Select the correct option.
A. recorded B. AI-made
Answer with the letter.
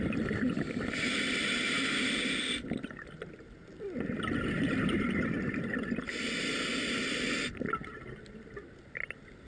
A